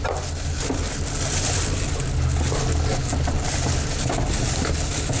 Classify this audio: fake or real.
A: real